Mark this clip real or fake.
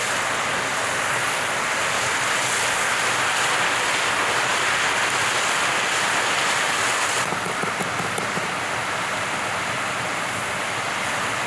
real